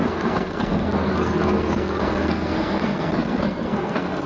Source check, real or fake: fake